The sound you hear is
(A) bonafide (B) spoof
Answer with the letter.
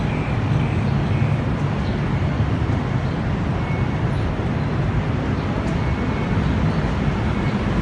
A